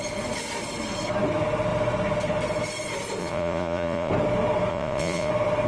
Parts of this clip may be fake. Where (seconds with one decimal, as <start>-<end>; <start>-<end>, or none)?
3.2-4.1; 4.7-5.3